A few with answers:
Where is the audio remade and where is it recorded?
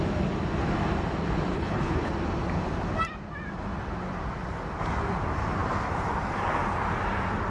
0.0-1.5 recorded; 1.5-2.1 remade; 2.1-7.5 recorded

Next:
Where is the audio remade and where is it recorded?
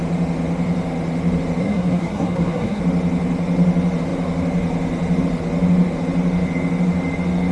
0.0-1.6 recorded; 1.6-2.8 remade; 2.8-7.5 recorded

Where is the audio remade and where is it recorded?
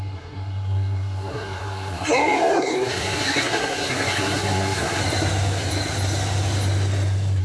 0.0-5.0 remade; 5.0-7.4 recorded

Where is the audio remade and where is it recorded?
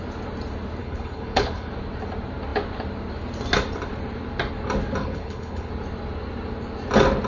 0.0-0.8 recorded; 0.8-1.7 remade; 1.7-5.0 recorded; 5.0-5.7 remade; 5.7-7.3 recorded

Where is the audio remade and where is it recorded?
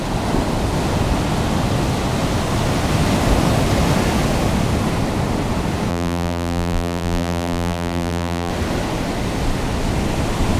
0.0-5.9 recorded; 5.9-8.5 remade; 8.5-10.6 recorded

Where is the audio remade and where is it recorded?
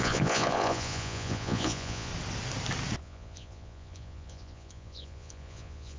0.0-2.1 remade; 2.1-3.0 recorded; 3.0-6.0 remade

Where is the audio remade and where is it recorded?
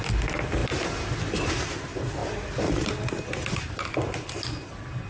0.0-5.1 recorded